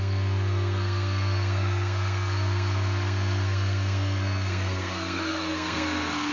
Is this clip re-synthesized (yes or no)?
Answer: yes